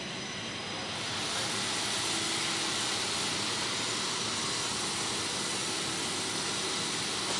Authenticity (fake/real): real